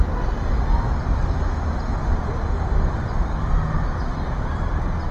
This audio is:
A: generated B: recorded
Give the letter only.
B